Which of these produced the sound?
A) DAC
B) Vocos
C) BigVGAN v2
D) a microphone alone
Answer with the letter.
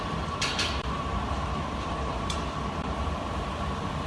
C